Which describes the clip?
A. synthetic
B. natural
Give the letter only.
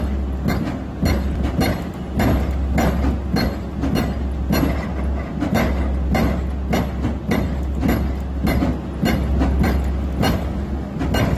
B